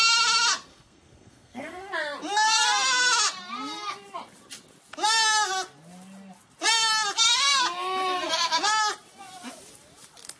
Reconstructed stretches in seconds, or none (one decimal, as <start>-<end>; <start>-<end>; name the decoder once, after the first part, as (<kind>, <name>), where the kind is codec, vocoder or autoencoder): 0.7-1.9 (codec, SNAC)